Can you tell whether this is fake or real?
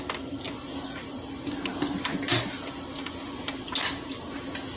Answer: real